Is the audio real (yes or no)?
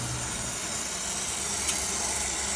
yes